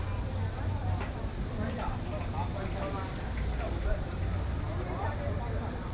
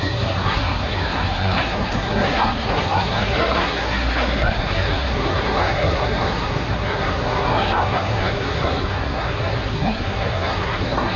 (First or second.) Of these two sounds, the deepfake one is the second